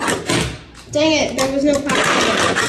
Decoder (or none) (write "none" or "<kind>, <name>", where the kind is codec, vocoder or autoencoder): none